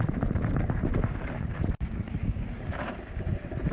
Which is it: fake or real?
fake